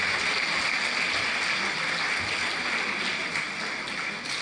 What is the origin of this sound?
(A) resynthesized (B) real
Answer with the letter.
B